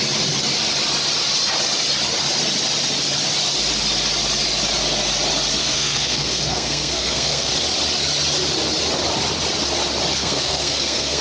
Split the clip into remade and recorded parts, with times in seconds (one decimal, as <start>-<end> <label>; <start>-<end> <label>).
0.0-5.6 recorded; 5.6-7.5 remade; 7.5-10.1 recorded; 10.1-11.2 remade